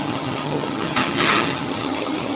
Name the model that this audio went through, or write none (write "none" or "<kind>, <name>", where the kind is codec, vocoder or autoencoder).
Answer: vocoder, HiFi-GAN